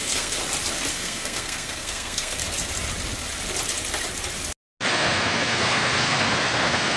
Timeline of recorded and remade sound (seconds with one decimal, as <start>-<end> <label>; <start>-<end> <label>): 0.0-0.4 remade; 0.4-0.9 recorded; 0.9-2.4 remade; 2.4-4.9 recorded; 4.9-7.0 remade

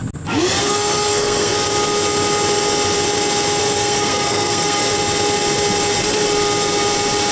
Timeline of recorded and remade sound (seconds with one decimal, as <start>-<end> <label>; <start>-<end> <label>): 0.0-0.6 recorded; 0.6-1.5 remade; 1.5-3.6 recorded; 3.6-4.9 remade; 4.9-7.3 recorded

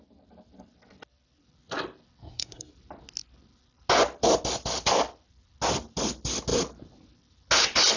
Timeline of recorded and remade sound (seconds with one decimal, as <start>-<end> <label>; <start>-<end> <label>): 0.0-2.2 recorded; 2.2-2.7 remade; 2.7-8.0 recorded

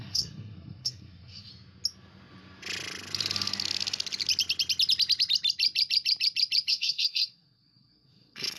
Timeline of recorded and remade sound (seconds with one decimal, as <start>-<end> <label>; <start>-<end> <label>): 0.0-1.5 remade; 1.5-6.7 recorded; 6.7-8.6 remade

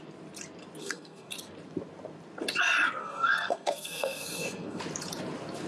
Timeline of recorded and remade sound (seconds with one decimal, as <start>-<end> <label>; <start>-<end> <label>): 0.0-0.8 recorded; 0.8-1.3 remade; 1.3-3.0 recorded; 3.0-4.8 remade; 4.8-5.7 recorded

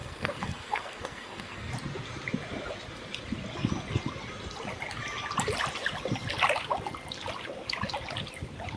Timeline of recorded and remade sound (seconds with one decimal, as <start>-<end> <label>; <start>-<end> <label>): 0.0-1.7 remade; 1.7-8.8 recorded